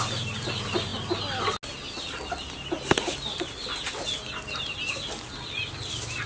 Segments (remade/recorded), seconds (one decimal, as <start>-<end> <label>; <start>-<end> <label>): 0.0-6.3 recorded